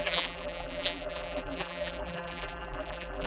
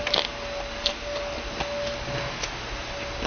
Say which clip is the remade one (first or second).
first